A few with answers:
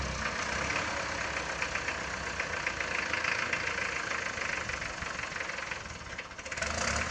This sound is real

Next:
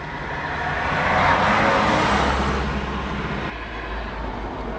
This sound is real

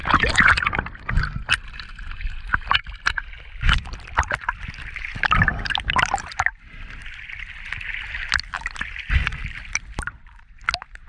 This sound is real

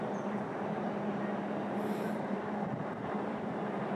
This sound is fake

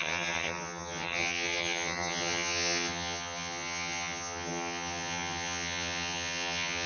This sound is fake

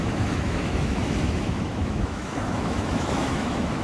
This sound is fake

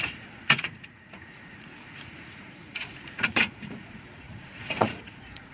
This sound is fake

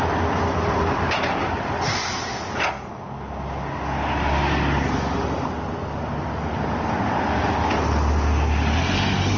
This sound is real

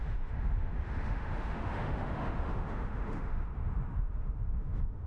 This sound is fake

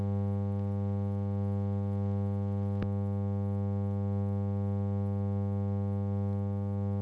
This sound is real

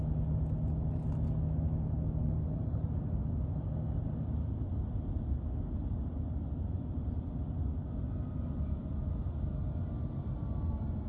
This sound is real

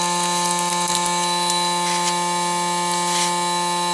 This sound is real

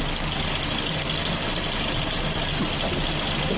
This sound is real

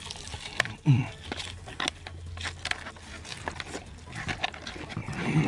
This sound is real